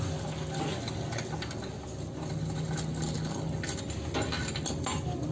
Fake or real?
real